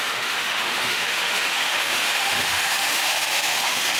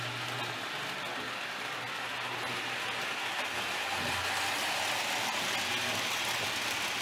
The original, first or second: second